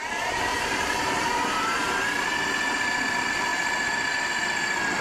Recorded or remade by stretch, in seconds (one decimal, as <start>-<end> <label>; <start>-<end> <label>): 0.0-2.3 remade; 2.3-5.0 recorded